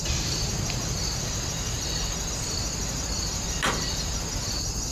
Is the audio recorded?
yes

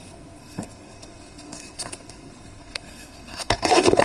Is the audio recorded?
no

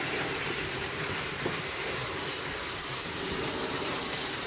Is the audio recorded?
no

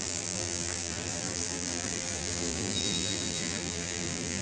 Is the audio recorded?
no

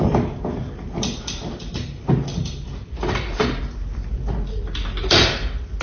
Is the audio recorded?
yes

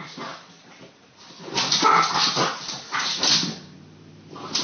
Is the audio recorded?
yes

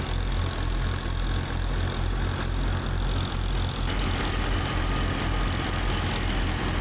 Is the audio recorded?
yes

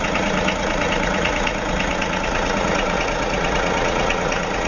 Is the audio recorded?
no